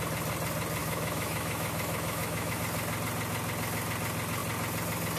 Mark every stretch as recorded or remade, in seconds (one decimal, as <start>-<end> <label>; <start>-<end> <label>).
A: 0.0-0.8 recorded; 0.8-2.6 remade; 2.6-5.2 recorded